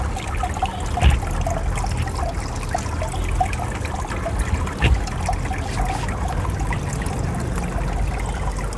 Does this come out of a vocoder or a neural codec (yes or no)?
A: no